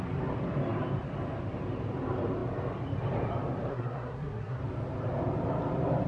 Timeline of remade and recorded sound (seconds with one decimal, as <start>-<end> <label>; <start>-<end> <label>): 0.0-3.7 recorded; 3.7-4.6 remade; 4.6-6.1 recorded